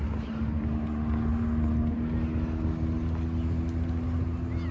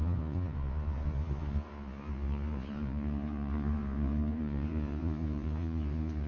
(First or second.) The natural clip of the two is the first